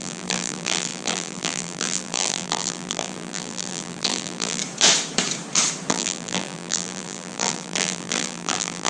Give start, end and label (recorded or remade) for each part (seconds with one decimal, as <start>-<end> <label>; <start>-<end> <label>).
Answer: 0.0-4.6 remade; 4.6-5.9 recorded; 5.9-8.9 remade